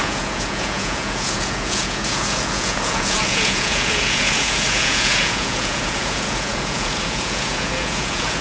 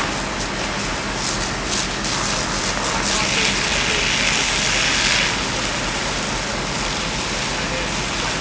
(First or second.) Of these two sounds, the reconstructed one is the first